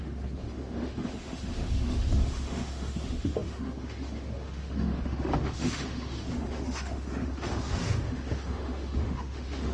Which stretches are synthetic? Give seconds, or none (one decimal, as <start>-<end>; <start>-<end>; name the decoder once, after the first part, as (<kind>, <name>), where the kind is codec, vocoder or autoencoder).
0.0-9.7 (autoencoder, DAC-VAE)